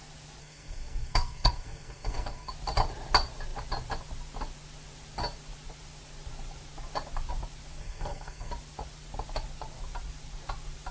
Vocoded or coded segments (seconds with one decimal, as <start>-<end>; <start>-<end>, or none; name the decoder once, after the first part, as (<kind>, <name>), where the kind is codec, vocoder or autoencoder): 0.4-2.5 (codec, SNAC); 7.8-8.5